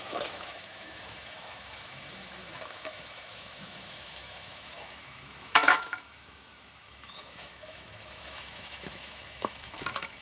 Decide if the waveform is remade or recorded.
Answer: remade